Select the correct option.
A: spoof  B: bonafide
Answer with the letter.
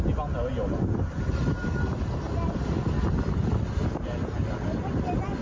B